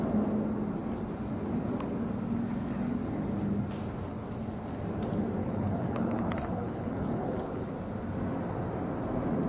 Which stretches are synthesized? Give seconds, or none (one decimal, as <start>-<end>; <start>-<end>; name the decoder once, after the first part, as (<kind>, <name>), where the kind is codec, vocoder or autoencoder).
5.4-7.7 (codec, HILCodec)